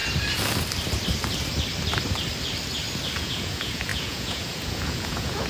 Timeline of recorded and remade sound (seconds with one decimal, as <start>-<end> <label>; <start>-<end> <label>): 0.0-3.2 recorded; 3.2-5.5 remade